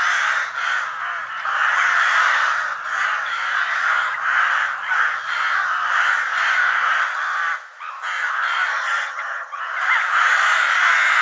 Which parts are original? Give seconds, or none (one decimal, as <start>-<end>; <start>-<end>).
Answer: 0.0-8.7; 9.6-11.2